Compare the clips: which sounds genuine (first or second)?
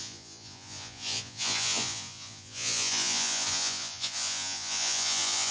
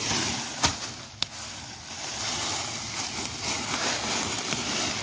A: second